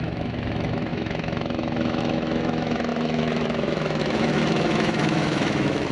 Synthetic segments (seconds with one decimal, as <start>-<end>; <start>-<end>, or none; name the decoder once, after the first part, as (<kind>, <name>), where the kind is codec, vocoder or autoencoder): 0.0-5.9 (autoencoder, DAC-VAE)